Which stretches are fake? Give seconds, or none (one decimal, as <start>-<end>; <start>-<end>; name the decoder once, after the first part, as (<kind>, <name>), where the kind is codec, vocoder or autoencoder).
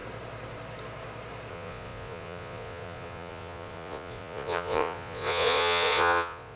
1.5-6.6 (vocoder, Vocos)